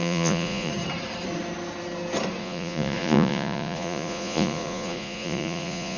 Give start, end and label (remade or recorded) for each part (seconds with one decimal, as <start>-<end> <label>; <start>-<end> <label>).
0.0-0.7 remade; 0.7-2.4 recorded; 2.4-6.0 remade

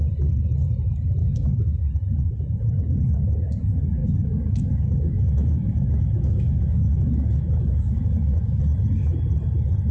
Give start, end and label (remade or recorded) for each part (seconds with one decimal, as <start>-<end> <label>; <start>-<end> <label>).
0.0-1.2 recorded; 1.2-1.9 remade; 1.9-4.0 recorded; 4.0-8.6 remade; 8.6-9.9 recorded

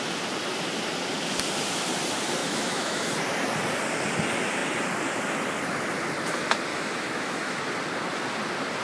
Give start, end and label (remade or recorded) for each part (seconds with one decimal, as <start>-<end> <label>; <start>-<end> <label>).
0.0-2.4 recorded; 2.4-3.1 remade; 3.1-6.7 recorded; 6.7-7.6 remade; 7.6-8.8 recorded

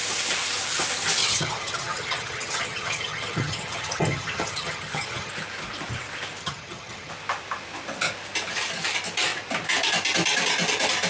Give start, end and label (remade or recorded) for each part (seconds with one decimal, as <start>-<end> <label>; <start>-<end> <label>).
0.0-1.2 recorded; 1.2-5.3 remade; 5.3-6.4 recorded; 6.4-7.1 remade; 7.1-11.1 recorded